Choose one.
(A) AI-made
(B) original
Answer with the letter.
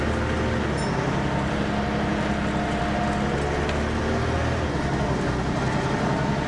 B